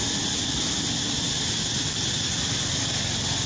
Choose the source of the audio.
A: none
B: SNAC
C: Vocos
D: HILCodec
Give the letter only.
A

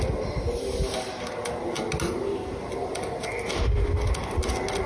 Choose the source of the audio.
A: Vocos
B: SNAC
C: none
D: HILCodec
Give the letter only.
C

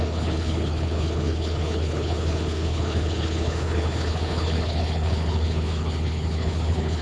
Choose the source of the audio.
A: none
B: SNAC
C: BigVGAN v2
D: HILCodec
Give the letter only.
D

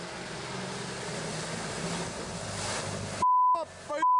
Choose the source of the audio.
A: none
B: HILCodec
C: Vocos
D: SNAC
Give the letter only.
A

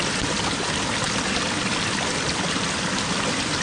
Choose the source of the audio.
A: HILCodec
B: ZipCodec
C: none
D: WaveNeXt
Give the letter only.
C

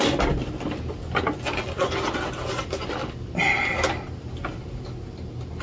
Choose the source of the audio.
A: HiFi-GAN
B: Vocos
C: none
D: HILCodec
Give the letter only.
C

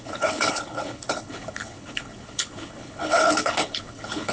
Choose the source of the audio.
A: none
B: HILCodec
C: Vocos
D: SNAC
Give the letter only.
B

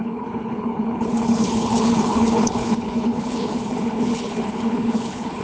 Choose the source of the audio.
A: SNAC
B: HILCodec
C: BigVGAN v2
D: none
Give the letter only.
B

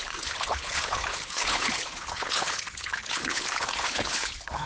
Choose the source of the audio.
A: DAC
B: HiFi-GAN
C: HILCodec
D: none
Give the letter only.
C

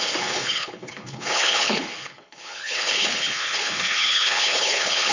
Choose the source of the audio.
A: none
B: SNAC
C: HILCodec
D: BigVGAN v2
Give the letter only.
C